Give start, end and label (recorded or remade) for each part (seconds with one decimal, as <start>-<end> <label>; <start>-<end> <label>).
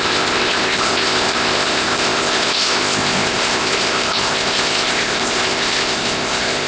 0.0-6.7 remade